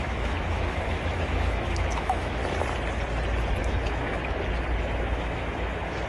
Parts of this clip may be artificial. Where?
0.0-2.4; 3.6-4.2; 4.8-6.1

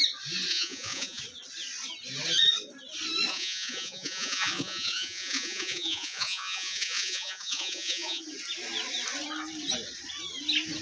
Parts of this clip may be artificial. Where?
0.5-1.2; 3.3-8.2

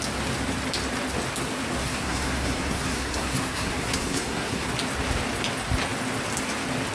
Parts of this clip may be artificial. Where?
1.8-4.7